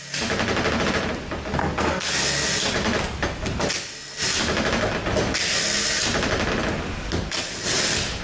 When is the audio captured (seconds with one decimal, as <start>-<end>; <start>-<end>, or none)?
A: 0.0-1.6; 2.1-8.2